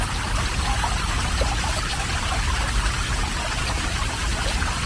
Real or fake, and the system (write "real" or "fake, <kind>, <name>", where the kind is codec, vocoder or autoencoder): fake, vocoder, BigVGAN v2